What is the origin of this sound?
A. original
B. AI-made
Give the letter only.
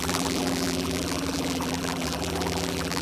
B